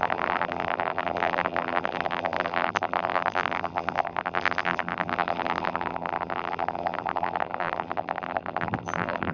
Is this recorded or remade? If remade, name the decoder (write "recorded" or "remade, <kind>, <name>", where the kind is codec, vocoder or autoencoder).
remade, vocoder, BigVGAN v2